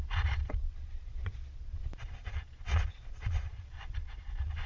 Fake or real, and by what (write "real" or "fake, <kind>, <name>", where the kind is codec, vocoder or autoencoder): fake, vocoder, Vocos